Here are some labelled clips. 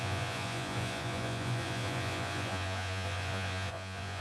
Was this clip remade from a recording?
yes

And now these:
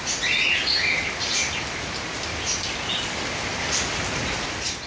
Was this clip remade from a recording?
no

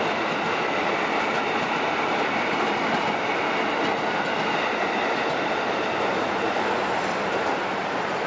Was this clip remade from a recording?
no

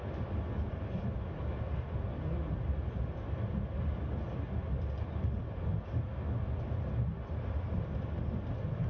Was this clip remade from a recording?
no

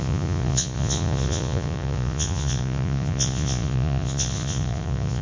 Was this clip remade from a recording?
yes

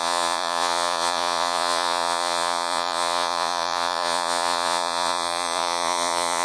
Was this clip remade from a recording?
yes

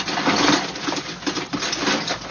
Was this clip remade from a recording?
no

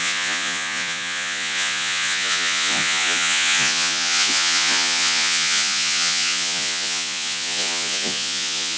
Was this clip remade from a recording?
yes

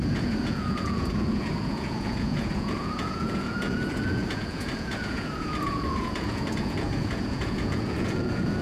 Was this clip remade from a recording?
yes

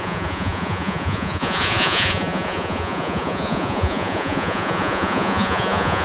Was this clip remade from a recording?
yes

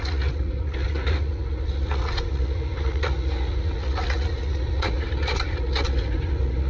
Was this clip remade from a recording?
yes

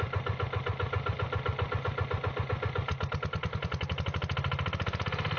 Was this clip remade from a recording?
no